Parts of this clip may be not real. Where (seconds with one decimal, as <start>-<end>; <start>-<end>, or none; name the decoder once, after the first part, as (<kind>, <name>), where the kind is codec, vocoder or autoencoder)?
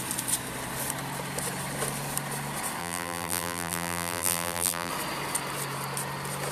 2.8-4.9 (vocoder, BigVGAN v2)